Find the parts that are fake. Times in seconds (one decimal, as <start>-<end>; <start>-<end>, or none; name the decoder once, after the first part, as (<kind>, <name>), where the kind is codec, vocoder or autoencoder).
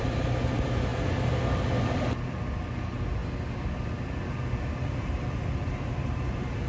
0.0-0.9 (vocoder, BigVGAN v2); 1.8-3.2; 3.8-6.7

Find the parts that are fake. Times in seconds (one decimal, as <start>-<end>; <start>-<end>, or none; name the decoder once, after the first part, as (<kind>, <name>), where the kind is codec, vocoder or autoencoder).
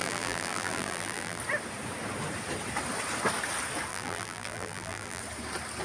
0.0-1.4 (vocoder, BigVGAN v2); 3.9-5.2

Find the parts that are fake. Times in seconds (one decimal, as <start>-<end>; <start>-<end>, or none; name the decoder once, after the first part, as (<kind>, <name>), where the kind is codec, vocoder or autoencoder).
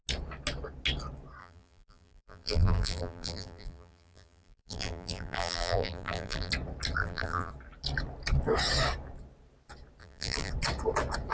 1.4-6.5 (vocoder, BigVGAN v2); 7.0-7.5; 10.0-10.5